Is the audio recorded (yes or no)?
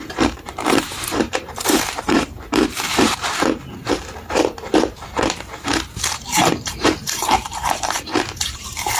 no